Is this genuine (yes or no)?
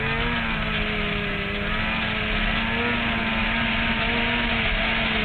yes